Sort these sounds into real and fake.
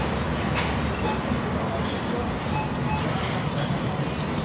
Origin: real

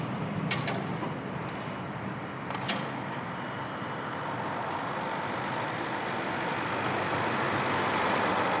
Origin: real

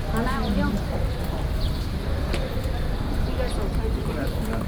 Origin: fake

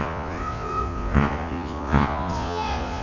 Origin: fake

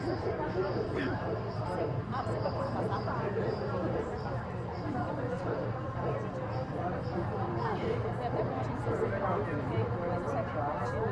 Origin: real